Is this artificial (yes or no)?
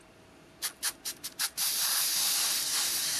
no